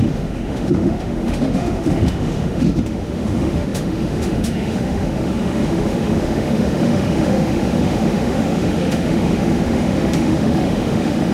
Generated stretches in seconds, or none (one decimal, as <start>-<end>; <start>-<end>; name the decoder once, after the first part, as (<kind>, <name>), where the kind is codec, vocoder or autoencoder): 0.0-11.3 (autoencoder, DAC-VAE)